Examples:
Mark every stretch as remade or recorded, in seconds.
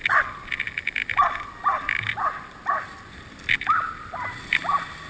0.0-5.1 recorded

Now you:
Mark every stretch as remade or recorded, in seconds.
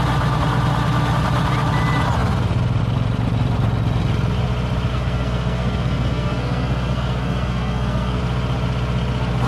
0.0-4.9 recorded; 4.9-8.2 remade; 8.2-9.5 recorded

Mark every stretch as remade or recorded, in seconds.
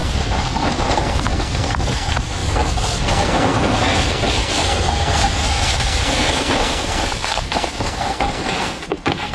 0.0-9.3 remade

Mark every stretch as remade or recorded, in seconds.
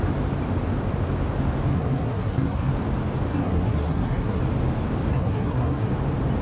0.0-1.7 recorded; 1.7-2.7 remade; 2.7-3.3 recorded; 3.3-4.4 remade; 4.4-5.1 recorded; 5.1-5.9 remade; 5.9-6.4 recorded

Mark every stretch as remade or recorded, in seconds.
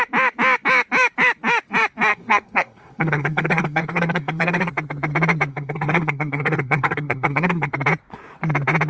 0.0-2.1 recorded; 2.1-4.7 remade; 4.7-5.5 recorded; 5.5-7.7 remade; 7.7-8.9 recorded